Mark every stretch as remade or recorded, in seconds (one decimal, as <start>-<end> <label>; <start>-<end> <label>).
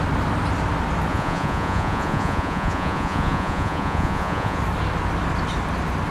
0.0-1.1 recorded; 1.1-4.6 remade; 4.6-6.1 recorded